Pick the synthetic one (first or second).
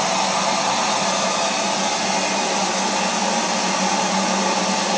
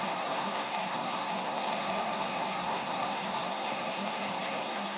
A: second